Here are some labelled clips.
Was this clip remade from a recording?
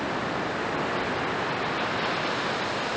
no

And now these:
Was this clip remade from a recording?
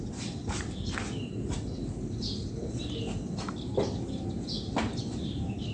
no